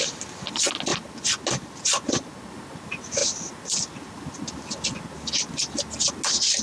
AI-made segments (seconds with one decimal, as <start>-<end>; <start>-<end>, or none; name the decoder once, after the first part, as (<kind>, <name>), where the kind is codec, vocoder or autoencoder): none